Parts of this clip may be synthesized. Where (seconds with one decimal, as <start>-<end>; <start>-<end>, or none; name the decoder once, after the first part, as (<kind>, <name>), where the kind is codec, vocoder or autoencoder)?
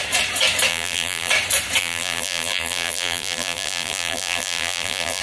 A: 0.7-1.3 (vocoder, BigVGAN v2); 1.8-5.2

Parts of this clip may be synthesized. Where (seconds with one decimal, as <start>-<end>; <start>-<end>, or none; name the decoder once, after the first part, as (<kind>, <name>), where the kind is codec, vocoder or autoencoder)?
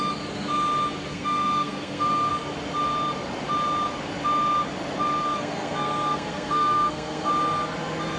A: 1.1-2.3 (codec, SNAC); 5.2-7.3